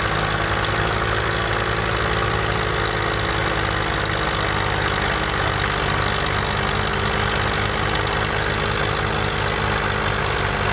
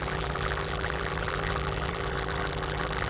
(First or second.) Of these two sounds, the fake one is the second